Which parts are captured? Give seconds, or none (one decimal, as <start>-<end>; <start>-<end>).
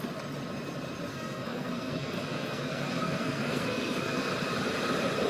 0.0-1.1; 4.3-5.3